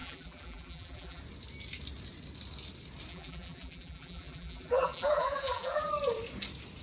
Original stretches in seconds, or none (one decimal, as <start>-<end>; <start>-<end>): 1.2-3.1; 5.9-6.8